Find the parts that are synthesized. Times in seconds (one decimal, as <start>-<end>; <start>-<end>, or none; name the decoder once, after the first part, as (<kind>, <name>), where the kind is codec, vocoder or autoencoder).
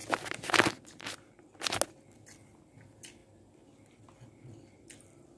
none